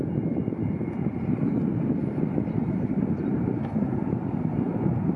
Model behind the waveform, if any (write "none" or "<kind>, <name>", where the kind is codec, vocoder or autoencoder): none